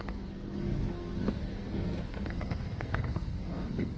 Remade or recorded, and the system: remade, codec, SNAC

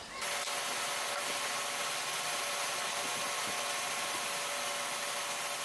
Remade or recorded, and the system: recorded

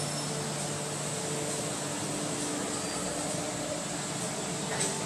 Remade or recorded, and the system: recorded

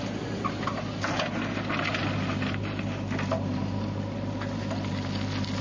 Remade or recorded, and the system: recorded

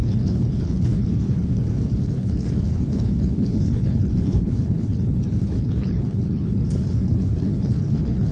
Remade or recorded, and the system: remade, codec, HILCodec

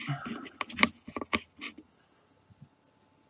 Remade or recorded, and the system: recorded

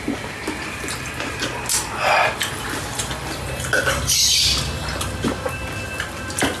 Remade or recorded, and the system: recorded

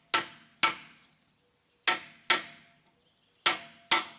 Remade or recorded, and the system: recorded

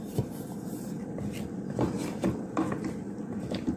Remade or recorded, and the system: recorded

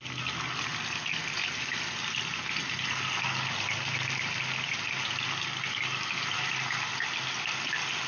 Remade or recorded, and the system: recorded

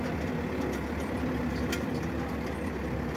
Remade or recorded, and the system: recorded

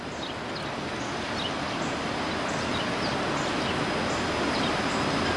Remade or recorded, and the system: recorded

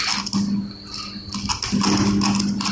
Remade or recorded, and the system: recorded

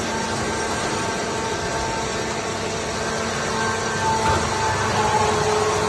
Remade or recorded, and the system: recorded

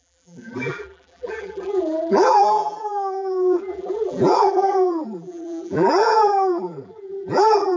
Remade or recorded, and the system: remade, vocoder, BigVGAN v2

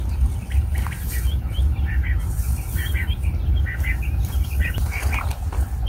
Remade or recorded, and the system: recorded